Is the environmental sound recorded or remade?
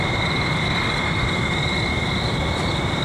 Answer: remade